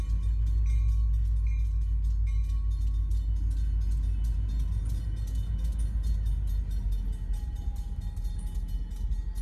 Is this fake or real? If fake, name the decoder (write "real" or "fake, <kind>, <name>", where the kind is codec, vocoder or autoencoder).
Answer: real